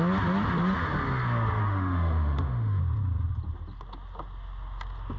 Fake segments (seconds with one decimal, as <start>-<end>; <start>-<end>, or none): 1.6-2.8